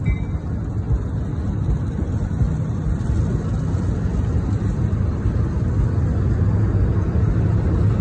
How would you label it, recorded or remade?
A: recorded